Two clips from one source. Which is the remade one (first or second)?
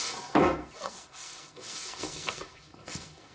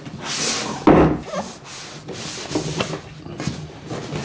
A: first